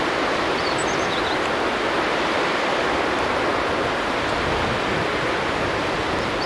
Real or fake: real